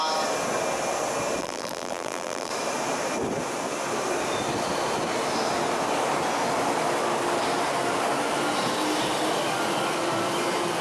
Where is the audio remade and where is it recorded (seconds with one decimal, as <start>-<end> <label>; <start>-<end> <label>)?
0.0-1.4 recorded; 1.4-2.5 remade; 2.5-10.8 recorded